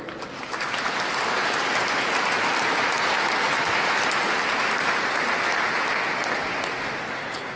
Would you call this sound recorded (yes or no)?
yes